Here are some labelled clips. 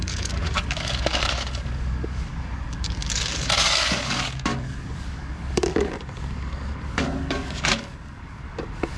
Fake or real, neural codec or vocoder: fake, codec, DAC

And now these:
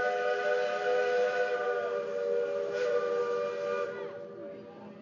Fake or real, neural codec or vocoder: real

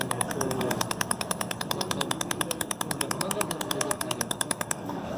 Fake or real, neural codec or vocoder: fake, codec, DAC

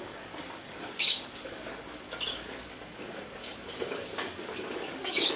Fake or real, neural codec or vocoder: fake, codec, DAC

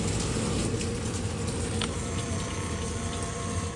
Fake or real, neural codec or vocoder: real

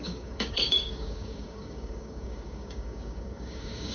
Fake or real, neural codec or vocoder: fake, codec, DAC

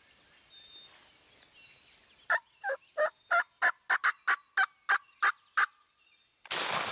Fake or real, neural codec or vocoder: real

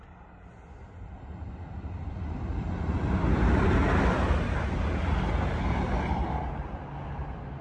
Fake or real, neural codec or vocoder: real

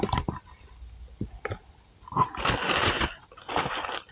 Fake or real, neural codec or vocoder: real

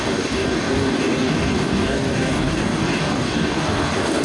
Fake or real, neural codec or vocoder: fake, codec, DAC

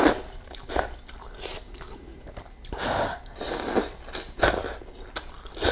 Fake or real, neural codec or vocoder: real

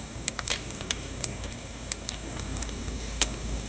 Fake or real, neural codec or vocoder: fake, codec, DAC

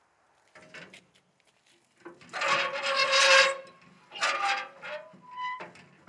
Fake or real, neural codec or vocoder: real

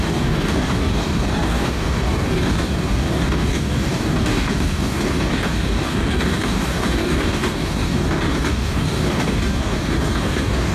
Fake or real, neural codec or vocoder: fake, codec, DAC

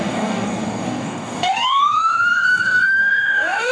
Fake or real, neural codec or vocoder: fake, codec, DAC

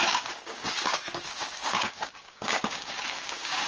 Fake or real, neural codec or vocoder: fake, codec, DAC